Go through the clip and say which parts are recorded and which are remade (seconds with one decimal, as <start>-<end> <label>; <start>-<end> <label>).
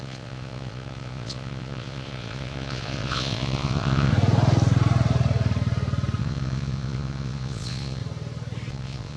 0.0-4.1 remade; 4.1-6.2 recorded; 6.2-8.0 remade; 8.0-8.7 recorded; 8.7-9.2 remade